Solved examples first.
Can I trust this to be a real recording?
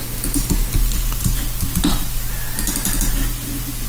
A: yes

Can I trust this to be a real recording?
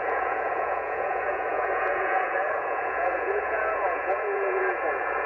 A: no